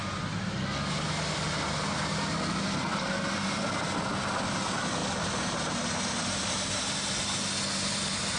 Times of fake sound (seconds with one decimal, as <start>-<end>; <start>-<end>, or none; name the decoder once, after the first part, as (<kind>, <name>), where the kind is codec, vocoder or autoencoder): none